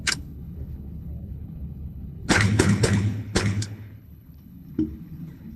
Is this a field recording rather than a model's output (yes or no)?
no